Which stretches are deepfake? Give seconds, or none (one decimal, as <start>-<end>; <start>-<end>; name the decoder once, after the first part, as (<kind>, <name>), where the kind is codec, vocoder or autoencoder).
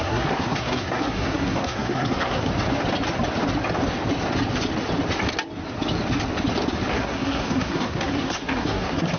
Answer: 0.0-2.5 (codec, SNAC); 6.9-9.2